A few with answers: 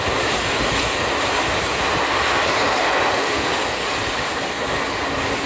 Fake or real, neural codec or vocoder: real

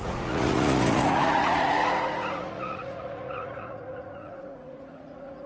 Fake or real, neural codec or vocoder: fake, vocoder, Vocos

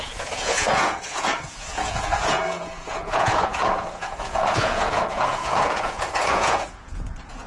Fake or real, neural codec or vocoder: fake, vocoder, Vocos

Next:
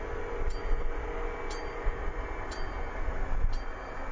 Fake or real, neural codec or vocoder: real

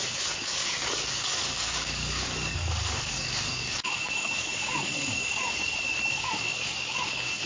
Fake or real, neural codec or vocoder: fake, codec, DAC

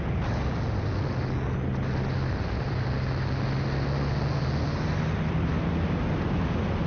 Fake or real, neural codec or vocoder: real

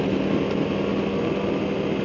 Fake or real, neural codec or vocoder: real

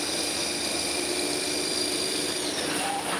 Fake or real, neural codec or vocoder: real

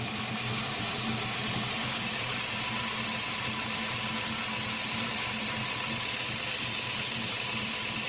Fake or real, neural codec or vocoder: fake, vocoder, BigVGAN v2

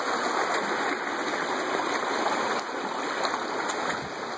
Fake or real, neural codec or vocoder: real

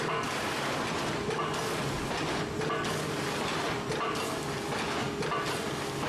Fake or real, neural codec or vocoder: real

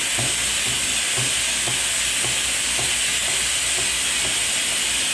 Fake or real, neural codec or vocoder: real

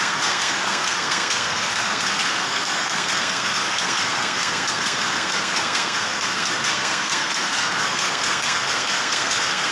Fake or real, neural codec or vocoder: fake, codec, SNAC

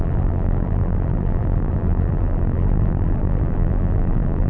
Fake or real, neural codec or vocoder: fake, vocoder, BigVGAN v2